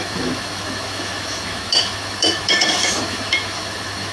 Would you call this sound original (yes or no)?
no